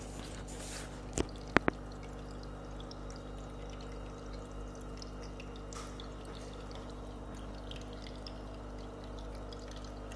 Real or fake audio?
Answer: real